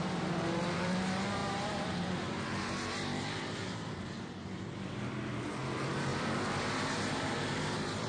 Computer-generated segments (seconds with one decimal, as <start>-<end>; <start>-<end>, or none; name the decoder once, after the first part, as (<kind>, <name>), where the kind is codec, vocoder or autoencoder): 0.0-6.1 (vocoder, BigVGAN v2); 7.2-8.1